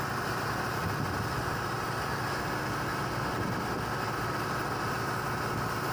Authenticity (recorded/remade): recorded